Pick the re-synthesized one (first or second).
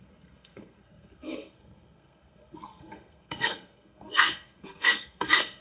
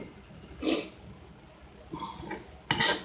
first